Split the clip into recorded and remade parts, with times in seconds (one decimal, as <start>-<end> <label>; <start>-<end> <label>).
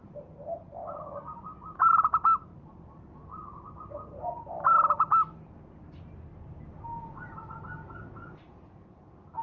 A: 0.0-4.2 remade; 4.2-9.4 recorded